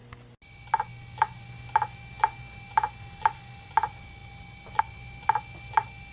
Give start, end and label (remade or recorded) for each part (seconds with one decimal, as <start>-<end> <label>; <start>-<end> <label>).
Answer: 0.0-6.1 recorded